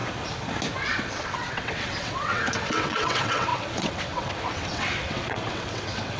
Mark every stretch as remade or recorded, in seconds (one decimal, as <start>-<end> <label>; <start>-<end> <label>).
0.0-0.8 recorded; 0.8-6.2 remade